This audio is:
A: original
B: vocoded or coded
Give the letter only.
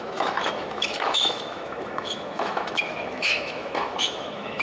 B